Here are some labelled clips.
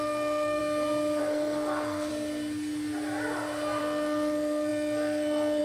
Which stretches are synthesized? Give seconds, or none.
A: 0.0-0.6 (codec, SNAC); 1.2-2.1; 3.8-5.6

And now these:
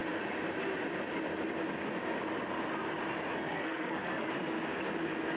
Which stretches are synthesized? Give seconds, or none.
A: 3.3-4.3 (codec, SNAC)

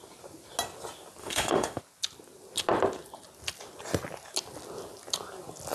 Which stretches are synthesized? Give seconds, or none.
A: 1.2-1.8 (autoencoder, DAC-VAE)

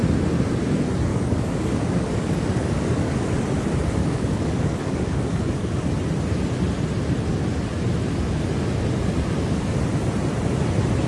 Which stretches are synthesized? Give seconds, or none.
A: 1.1-3.2 (codec, DAC); 4.0-5.8

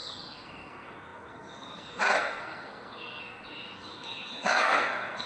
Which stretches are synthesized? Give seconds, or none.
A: 0.0-5.3 (codec, SNAC)